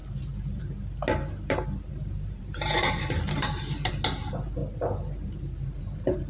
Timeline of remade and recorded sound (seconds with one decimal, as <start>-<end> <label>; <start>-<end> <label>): 0.0-0.6 remade; 0.6-1.9 recorded; 1.9-3.9 remade; 3.9-6.3 recorded